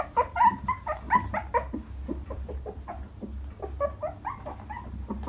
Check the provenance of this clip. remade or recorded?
recorded